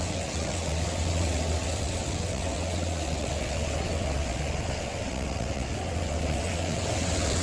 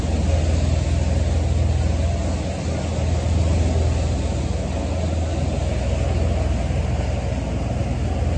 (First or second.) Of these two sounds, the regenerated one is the first